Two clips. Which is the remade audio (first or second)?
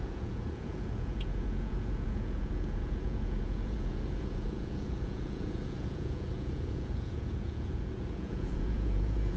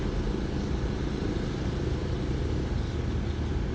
first